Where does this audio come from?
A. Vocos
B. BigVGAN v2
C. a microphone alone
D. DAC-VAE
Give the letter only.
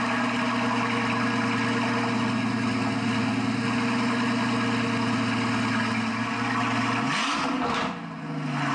C